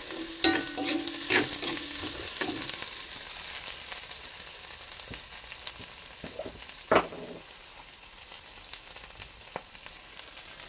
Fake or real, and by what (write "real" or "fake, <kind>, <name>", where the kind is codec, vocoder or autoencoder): real